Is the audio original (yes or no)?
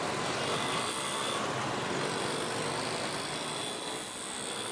yes